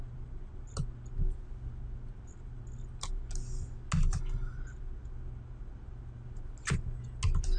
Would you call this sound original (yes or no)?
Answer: yes